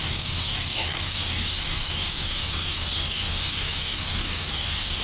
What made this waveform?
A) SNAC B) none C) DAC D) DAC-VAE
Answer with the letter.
C